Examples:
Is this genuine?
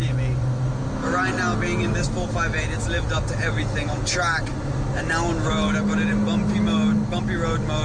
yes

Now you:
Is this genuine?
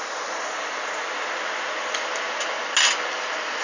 yes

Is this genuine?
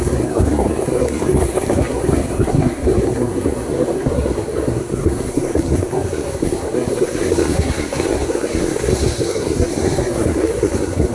no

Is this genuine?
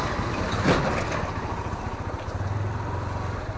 yes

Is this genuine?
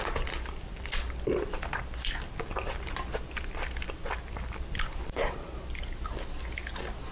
yes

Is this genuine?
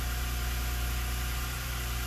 yes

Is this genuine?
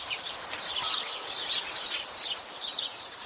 yes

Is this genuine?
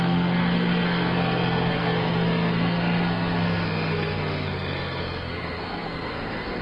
no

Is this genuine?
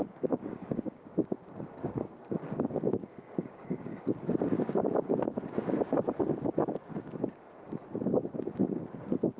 no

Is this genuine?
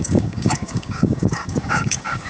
no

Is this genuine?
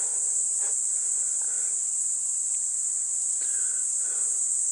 yes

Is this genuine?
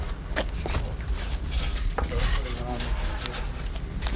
yes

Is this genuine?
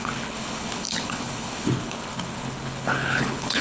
no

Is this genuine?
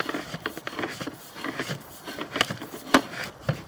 yes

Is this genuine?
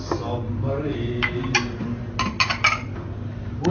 yes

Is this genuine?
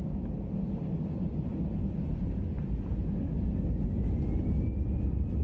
yes